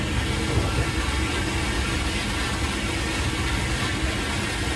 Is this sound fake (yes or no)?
no